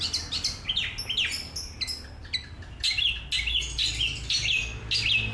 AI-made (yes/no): no